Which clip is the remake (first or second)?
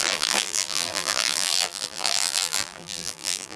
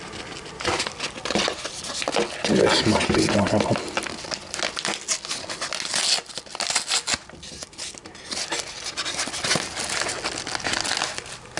first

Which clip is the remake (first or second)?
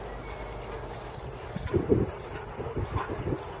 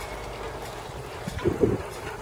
second